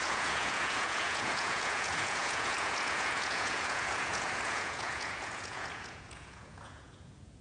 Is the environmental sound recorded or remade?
remade